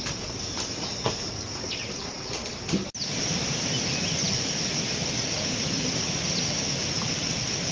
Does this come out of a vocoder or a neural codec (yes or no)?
no